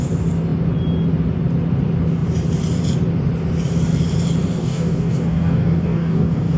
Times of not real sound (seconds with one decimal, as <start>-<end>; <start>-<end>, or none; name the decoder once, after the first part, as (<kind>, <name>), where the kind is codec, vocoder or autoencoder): 4.6-6.6 (codec, DAC)